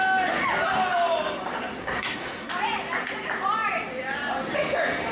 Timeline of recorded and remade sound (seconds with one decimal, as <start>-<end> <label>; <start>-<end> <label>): 0.0-1.8 recorded; 1.8-2.5 remade; 2.5-5.1 recorded